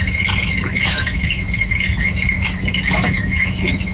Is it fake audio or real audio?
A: fake